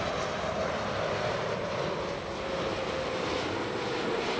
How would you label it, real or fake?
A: real